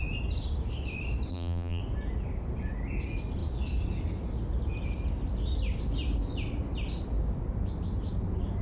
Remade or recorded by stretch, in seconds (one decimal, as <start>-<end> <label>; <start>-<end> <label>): 0.0-1.3 recorded; 1.3-1.8 remade; 1.8-8.6 recorded